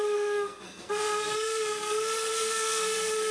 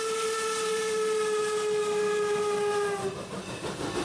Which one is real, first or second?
second